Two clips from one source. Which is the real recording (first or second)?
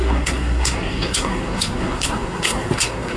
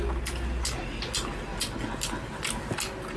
second